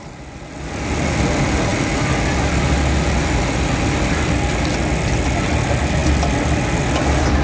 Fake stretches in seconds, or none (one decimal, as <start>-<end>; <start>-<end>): none